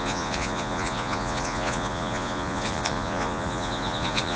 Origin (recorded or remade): remade